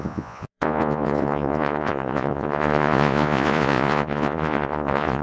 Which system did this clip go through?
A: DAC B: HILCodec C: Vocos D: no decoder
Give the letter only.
C